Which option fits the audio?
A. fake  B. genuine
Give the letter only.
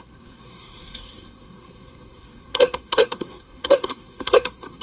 A